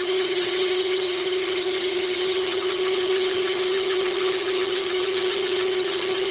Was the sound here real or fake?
fake